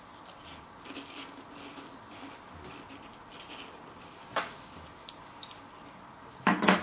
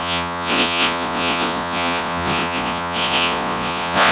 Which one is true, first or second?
first